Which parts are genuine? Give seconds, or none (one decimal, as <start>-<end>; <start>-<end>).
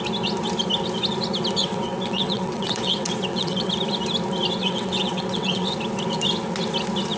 0.0-1.6; 3.7-4.6; 5.8-7.2